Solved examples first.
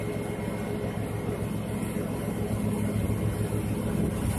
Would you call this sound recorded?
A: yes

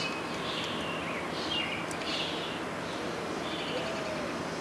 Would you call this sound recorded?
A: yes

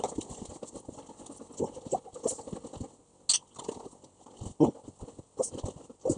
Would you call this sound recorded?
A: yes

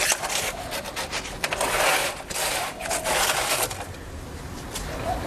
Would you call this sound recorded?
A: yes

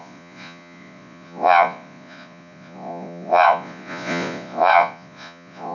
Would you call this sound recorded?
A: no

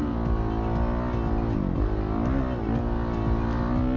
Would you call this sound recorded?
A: yes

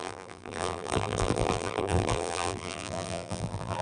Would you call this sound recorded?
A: no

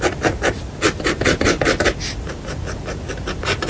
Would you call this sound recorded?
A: yes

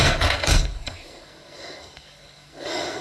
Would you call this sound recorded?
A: no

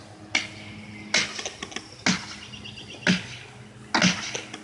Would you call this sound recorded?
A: yes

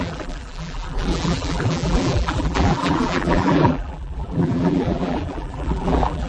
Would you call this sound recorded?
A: no